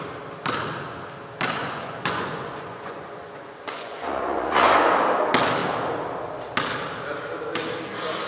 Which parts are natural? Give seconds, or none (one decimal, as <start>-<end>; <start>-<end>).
0.0-1.6; 4.8-8.3